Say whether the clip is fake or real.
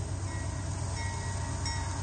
real